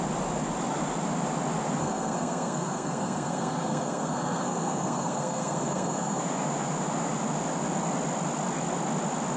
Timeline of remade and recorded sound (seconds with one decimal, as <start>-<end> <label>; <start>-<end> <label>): 0.0-1.8 recorded; 1.8-6.2 remade; 6.2-9.4 recorded